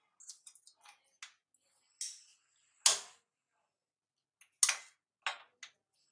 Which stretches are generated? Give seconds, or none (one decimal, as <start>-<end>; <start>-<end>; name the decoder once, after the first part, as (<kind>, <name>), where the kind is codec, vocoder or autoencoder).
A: none